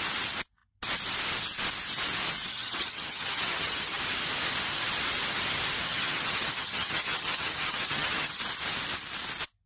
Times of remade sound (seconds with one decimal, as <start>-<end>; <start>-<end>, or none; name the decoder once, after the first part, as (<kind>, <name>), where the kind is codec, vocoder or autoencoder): 2.5-4.0 (vocoder, HiFi-GAN); 5.8-8.4